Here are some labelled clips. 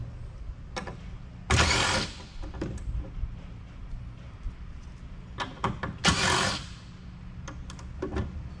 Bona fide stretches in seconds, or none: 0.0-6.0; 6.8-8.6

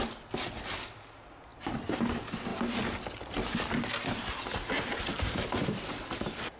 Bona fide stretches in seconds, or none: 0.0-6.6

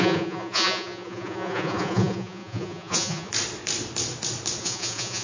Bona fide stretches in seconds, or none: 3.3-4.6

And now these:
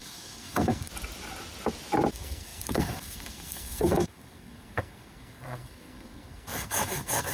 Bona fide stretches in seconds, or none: 0.9-2.1

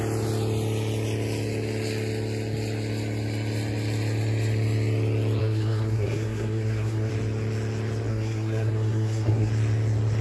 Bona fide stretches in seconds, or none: 0.0-5.4; 7.1-8.1; 9.5-10.2

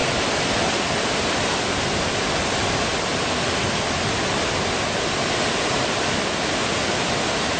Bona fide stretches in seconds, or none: 0.0-7.6